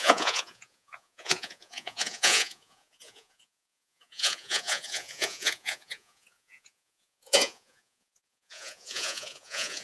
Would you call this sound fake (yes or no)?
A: yes